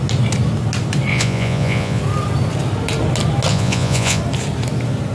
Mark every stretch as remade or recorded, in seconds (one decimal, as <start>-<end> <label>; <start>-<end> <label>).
0.0-1.1 recorded; 1.1-2.0 remade; 2.0-3.5 recorded; 3.5-4.2 remade; 4.2-5.1 recorded